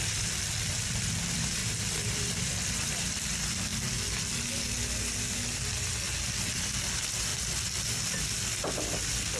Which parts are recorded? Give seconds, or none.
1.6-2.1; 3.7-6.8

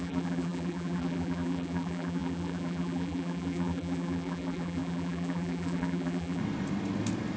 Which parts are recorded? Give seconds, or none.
6.4-7.4

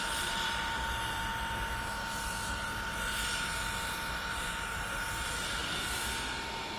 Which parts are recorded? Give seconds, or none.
1.3-4.3; 5.6-6.8

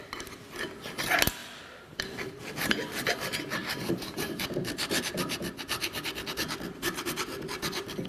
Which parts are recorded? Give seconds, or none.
0.0-1.4; 2.0-3.6; 5.0-8.1